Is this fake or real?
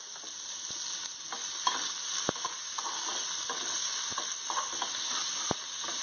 real